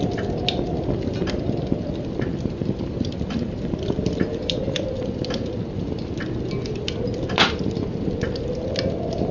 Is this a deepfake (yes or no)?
no